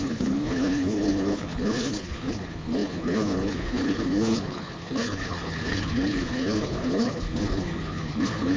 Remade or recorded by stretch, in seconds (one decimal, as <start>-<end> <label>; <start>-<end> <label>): 0.0-8.6 remade